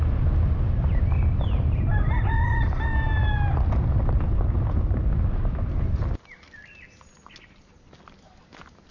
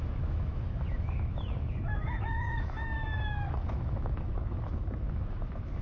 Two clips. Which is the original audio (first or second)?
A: first